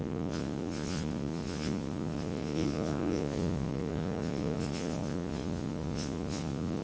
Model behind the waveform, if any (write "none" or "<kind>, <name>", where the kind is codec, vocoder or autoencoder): vocoder, Vocos